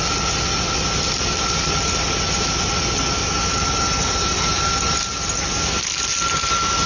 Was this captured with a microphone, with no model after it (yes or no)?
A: yes